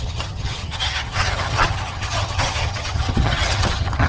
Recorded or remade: remade